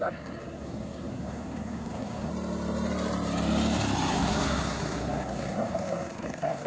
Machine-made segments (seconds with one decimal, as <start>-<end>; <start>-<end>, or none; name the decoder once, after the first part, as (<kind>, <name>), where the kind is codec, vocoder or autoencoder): 0.0-2.3 (codec, SNAC); 4.1-6.7